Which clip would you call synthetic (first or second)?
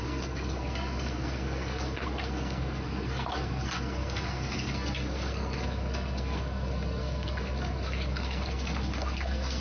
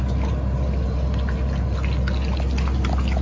first